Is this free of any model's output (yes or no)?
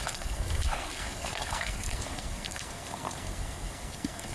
no